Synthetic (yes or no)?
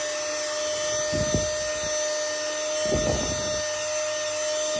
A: no